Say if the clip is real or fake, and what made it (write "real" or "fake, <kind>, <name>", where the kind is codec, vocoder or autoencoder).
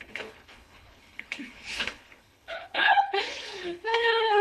fake, codec, HILCodec